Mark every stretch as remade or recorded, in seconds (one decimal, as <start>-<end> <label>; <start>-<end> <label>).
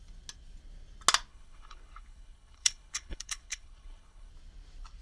0.0-1.3 recorded; 1.3-4.3 remade; 4.3-5.0 recorded